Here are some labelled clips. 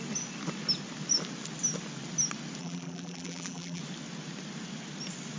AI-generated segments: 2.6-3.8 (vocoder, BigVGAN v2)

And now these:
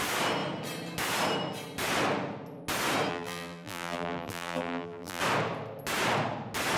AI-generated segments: 3.1-5.2 (vocoder, BigVGAN v2)

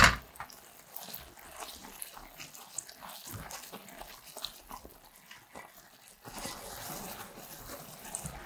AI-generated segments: 1.8-3.1 (vocoder, BigVGAN v2)

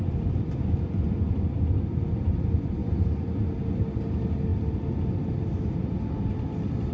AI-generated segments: 2.8-3.6 (vocoder, BigVGAN v2)